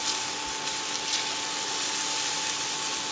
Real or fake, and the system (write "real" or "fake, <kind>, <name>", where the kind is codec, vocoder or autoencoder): real